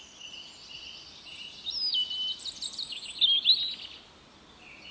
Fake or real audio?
real